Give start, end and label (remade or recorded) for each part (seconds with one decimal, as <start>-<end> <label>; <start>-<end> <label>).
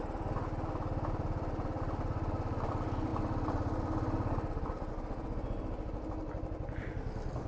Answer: 0.0-7.5 recorded